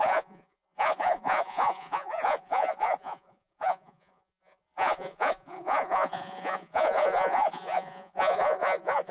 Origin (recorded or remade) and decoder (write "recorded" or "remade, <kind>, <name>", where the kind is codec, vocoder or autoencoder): remade, vocoder, Vocos